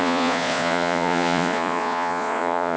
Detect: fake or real fake